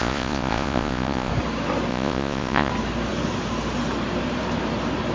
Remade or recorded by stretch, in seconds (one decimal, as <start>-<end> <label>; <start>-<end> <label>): 0.0-1.3 remade; 1.3-1.9 recorded; 1.9-2.7 remade; 2.7-5.1 recorded